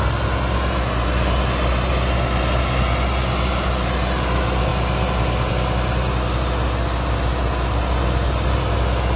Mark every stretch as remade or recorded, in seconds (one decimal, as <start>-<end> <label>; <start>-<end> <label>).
0.0-9.2 recorded